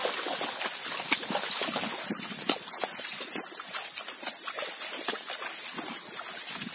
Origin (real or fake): real